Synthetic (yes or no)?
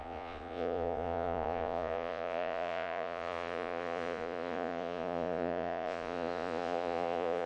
yes